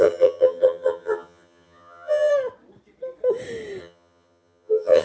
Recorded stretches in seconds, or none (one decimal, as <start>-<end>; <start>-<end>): 2.3-3.8